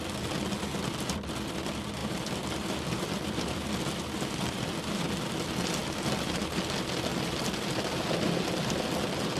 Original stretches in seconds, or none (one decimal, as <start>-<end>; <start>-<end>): 0.0-2.0; 5.1-5.8; 6.4-9.4